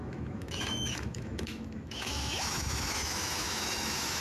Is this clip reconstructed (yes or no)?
yes